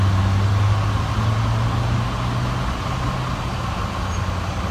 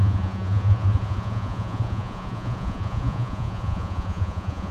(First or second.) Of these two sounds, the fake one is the second